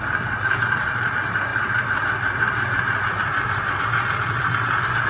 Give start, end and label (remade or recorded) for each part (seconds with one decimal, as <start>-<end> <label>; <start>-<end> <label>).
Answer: 0.0-5.1 recorded